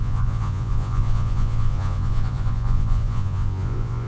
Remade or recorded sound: remade